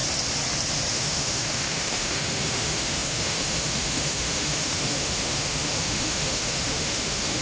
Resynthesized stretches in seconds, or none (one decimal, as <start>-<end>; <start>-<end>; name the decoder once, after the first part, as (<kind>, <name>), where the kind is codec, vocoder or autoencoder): 0.9-7.4 (autoencoder, DAC-VAE)